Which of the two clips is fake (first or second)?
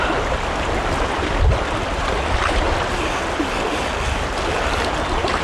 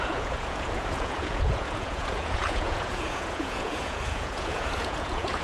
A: second